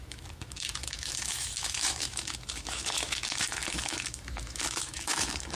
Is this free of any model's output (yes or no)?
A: no